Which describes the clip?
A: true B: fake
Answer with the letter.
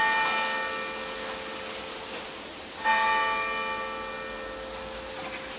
A